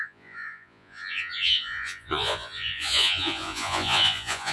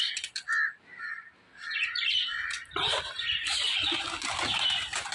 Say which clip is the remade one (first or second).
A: first